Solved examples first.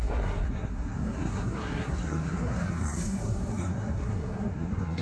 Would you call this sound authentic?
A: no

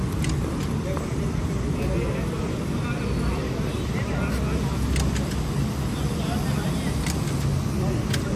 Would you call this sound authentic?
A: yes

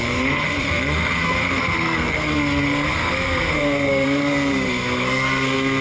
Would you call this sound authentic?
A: no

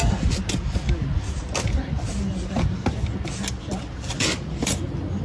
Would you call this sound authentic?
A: yes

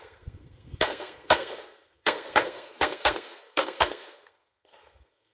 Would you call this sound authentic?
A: no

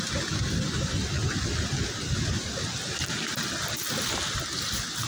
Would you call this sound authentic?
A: yes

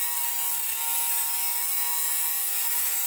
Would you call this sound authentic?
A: yes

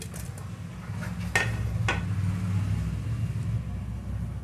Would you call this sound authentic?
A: yes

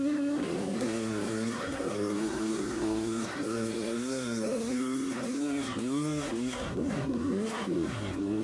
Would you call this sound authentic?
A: no